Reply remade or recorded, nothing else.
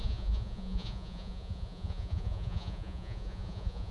remade